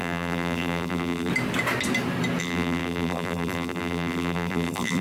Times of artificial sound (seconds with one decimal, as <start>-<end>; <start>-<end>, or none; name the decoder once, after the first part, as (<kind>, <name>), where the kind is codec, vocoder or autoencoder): 0.0-1.3 (vocoder, BigVGAN v2); 2.4-5.0